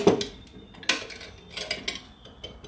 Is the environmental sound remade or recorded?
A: recorded